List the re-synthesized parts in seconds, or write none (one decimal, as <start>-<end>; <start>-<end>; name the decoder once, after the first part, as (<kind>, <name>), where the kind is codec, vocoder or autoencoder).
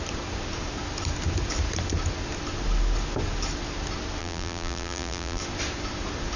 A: 4.2-5.4 (vocoder, BigVGAN v2)